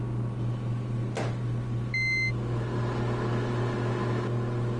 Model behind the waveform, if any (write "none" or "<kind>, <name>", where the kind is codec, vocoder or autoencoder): none